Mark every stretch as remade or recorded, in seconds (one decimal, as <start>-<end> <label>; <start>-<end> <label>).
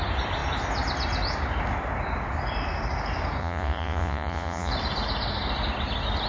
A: 0.0-3.4 recorded; 3.4-4.7 remade; 4.7-6.3 recorded